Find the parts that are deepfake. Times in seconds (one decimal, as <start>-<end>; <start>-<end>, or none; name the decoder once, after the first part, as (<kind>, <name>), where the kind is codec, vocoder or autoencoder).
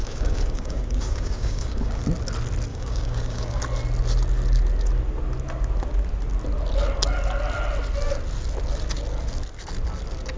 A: 0.0-2.0 (codec, DAC); 2.7-3.6